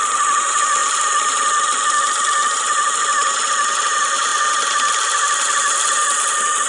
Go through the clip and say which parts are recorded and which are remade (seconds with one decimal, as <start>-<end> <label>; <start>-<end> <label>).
0.0-6.7 recorded